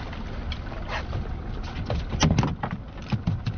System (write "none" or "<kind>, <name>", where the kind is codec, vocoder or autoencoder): none